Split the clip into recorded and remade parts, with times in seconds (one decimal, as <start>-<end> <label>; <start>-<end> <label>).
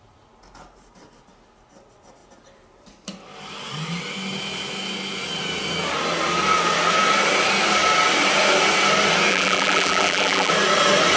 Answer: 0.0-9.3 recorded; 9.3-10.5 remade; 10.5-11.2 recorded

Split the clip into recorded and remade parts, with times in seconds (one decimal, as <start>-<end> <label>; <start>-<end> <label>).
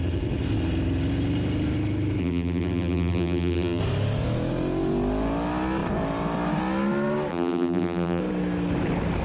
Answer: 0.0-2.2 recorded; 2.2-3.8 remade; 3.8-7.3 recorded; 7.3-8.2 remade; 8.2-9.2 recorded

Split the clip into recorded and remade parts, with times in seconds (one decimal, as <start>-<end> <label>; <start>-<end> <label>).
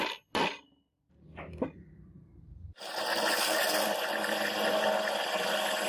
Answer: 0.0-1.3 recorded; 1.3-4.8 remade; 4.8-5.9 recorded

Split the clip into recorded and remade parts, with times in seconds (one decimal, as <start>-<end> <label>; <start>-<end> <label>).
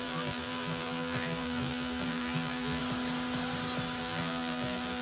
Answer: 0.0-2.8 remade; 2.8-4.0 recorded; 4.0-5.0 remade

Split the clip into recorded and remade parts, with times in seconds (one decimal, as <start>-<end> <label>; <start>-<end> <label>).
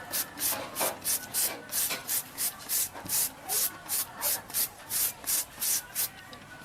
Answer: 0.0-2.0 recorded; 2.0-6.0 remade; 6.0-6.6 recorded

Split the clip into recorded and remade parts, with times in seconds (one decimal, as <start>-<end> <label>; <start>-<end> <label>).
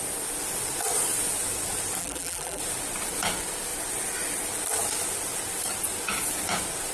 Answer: 0.0-2.0 recorded; 2.0-2.6 remade; 2.6-6.9 recorded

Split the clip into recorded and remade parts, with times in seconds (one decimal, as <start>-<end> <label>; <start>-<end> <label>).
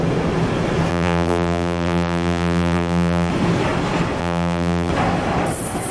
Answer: 0.0-0.9 recorded; 0.9-3.3 remade; 3.3-4.2 recorded; 4.2-4.9 remade; 4.9-5.9 recorded